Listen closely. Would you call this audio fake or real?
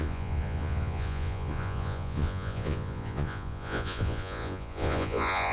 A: fake